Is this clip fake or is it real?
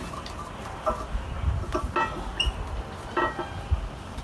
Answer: real